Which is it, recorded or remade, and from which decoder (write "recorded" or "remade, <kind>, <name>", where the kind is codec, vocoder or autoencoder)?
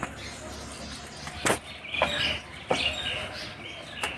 recorded